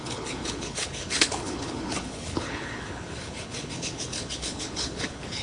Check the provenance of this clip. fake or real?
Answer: fake